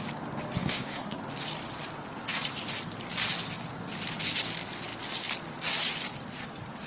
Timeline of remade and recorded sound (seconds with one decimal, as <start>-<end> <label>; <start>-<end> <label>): 0.0-0.6 recorded; 0.6-1.2 remade; 1.2-6.9 recorded